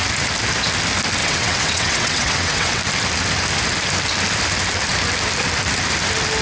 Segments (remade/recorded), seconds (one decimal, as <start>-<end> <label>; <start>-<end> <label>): 0.0-1.2 recorded; 1.2-2.8 remade; 2.8-6.4 recorded